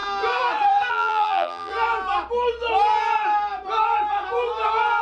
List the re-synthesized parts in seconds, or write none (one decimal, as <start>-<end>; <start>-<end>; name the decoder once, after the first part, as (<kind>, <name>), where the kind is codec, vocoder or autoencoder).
0.9-1.7 (vocoder, BigVGAN v2)

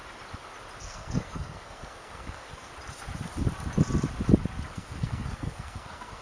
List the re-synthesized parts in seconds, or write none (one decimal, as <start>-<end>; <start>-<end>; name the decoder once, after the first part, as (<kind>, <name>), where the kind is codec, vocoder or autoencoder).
0.8-2.7 (codec, SNAC); 4.7-6.2